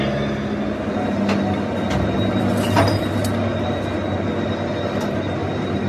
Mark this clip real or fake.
real